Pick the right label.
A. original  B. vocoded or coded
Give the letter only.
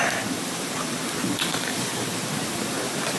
B